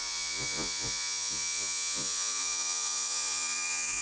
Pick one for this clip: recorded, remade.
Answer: remade